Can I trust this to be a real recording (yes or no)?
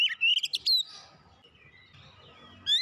yes